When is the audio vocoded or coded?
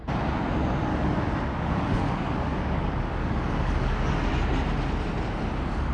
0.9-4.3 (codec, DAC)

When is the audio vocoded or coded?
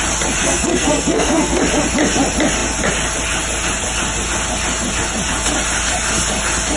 0.4-1.6 (codec, SNAC)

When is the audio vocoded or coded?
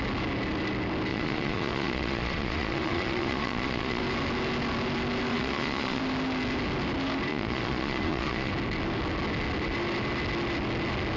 1.1-4.0 (vocoder, Vocos); 5.3-6.0; 7.3-8.5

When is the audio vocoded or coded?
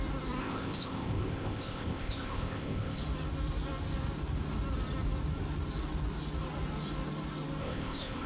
0.4-3.0 (codec, ZipCodec); 7.6-8.3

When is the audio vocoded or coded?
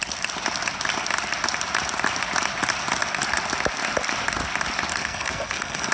4.9-5.9 (codec, SNAC)